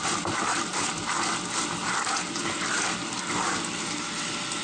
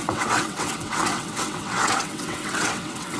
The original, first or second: first